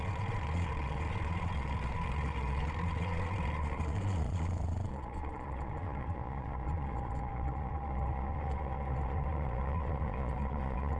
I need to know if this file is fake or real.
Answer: fake